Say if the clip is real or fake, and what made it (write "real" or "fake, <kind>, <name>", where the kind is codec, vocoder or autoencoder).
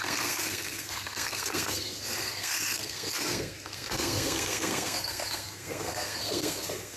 fake, codec, SNAC